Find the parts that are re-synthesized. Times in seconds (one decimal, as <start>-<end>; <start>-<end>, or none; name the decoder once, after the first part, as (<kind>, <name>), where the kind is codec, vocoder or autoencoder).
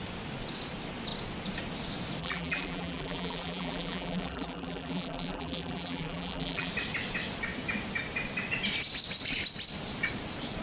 2.2-6.7 (vocoder, BigVGAN v2)